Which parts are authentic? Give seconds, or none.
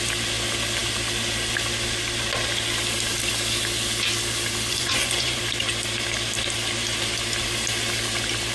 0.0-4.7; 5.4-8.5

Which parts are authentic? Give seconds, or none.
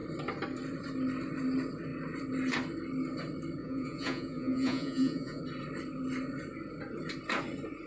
0.0-3.6; 5.4-7.9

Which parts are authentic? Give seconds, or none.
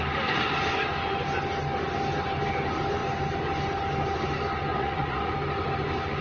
0.0-4.7; 5.3-6.2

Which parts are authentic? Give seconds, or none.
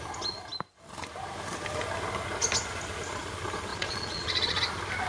0.0-3.7; 4.6-5.1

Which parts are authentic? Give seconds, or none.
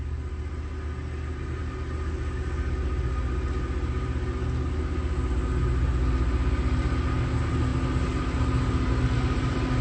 0.0-9.8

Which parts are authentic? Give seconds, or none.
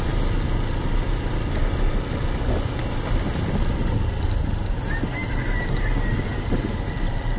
0.0-7.4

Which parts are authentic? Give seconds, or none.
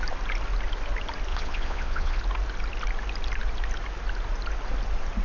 0.0-1.3; 2.2-5.2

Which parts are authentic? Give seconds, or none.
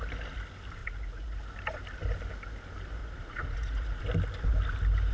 0.0-0.8; 1.4-3.0; 4.0-5.1